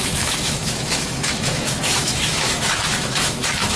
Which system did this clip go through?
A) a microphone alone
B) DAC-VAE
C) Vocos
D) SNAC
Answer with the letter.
B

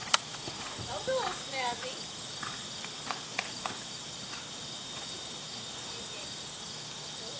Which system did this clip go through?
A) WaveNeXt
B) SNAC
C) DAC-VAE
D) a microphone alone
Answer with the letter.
D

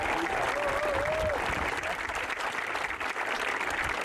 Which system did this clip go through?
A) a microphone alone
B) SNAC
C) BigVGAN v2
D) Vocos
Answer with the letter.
A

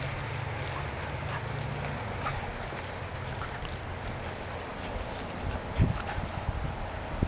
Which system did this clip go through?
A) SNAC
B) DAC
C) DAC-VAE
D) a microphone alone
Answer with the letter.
D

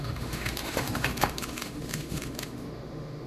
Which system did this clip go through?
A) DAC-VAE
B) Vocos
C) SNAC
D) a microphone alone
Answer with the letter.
A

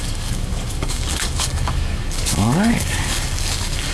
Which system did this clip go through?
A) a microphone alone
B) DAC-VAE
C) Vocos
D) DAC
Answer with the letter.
D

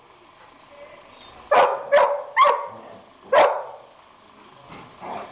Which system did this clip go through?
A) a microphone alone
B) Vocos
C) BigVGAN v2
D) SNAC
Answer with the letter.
A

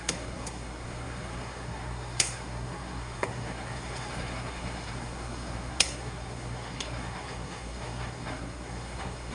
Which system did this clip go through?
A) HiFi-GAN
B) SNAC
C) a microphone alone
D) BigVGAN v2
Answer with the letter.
B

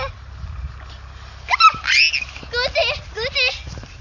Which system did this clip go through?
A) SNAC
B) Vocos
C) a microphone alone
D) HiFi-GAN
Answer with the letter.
C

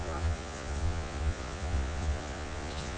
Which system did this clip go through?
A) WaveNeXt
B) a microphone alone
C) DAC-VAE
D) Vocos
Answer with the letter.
D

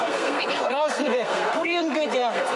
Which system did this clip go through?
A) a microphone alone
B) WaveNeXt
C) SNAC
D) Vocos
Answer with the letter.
C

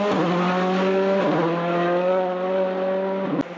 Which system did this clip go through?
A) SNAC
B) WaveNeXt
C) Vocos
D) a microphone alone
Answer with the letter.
D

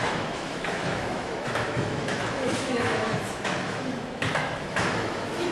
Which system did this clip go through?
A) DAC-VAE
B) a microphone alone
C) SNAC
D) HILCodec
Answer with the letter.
A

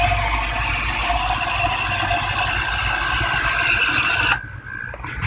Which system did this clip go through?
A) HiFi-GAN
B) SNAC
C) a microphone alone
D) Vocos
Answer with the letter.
C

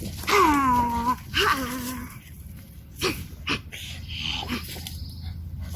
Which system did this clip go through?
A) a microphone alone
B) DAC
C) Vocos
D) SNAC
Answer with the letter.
A